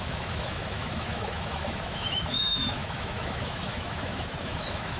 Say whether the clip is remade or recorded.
remade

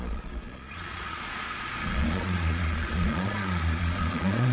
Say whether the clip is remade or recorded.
remade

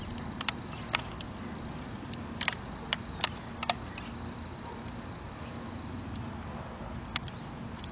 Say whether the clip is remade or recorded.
recorded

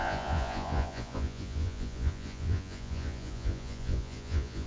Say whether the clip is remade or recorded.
remade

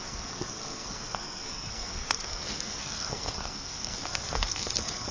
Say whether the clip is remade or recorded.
remade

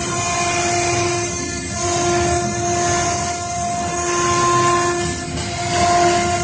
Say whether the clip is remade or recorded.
recorded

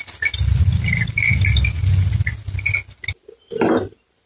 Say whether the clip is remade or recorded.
recorded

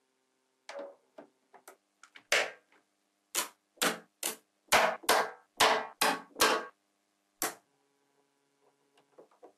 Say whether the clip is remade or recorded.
recorded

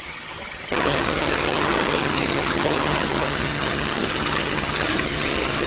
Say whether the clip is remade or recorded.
remade